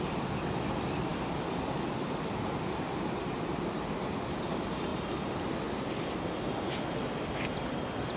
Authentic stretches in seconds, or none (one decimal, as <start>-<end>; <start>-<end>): 0.0-8.2